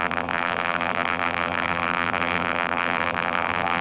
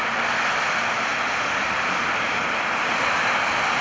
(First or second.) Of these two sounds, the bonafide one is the second